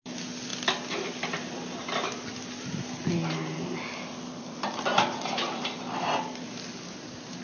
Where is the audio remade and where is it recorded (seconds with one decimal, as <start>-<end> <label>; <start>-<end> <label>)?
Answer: 0.0-4.9 recorded; 4.9-6.1 remade; 6.1-7.4 recorded